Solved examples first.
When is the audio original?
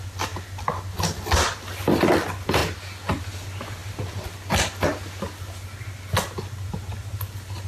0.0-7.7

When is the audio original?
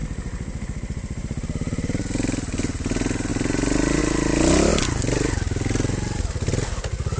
2.0-3.3; 4.0-7.2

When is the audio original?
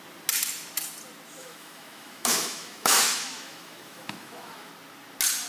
0.0-1.4; 4.7-5.5